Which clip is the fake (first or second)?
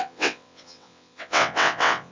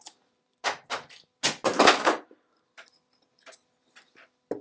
first